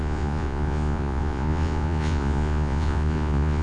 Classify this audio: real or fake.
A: fake